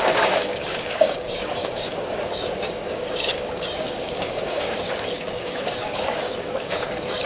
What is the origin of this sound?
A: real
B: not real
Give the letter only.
B